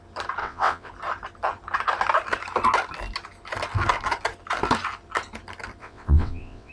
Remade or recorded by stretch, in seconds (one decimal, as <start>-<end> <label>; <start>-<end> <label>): 0.0-0.4 recorded; 0.4-0.9 remade; 0.9-5.8 recorded; 5.8-6.7 remade